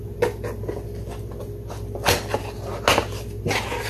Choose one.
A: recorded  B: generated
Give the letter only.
A